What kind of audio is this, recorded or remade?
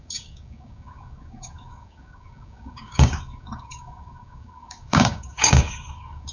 remade